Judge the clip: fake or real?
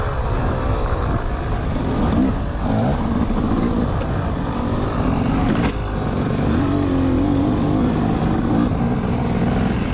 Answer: real